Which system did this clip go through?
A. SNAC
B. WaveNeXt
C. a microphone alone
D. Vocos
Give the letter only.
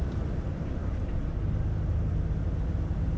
C